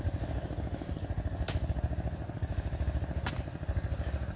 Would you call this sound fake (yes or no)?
no